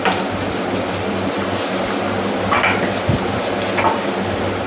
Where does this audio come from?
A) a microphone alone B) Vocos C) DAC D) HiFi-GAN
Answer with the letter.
A